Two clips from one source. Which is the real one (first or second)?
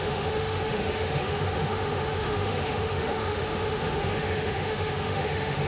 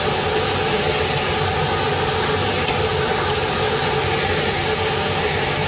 second